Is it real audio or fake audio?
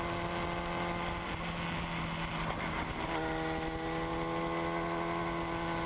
real